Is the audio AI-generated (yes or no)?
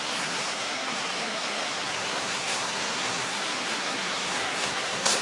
yes